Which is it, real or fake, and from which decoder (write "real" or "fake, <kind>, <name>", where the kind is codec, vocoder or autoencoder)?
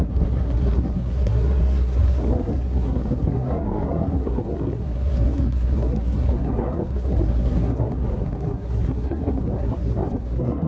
fake, codec, SNAC